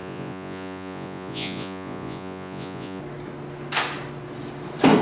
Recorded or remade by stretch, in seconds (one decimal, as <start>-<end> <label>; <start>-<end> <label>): 0.0-3.0 remade; 3.0-5.0 recorded